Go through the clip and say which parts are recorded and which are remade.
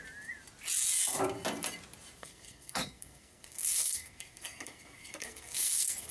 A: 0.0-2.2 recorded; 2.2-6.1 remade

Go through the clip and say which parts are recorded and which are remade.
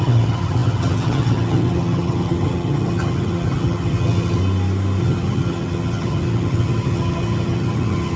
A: 0.0-4.4 remade; 4.4-5.0 recorded; 5.0-8.2 remade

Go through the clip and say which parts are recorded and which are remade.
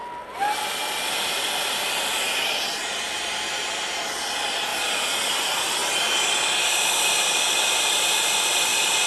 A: 0.0-4.7 recorded; 4.7-5.3 remade; 5.3-9.1 recorded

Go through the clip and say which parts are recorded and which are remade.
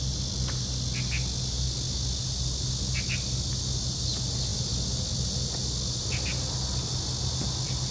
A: 0.0-7.9 recorded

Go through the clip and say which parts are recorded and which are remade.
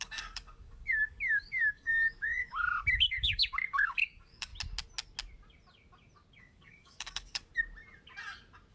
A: 0.0-4.5 remade; 4.5-6.4 recorded; 6.4-7.5 remade; 7.5-8.7 recorded